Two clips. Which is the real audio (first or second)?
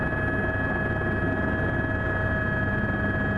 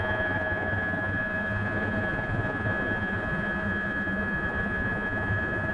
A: first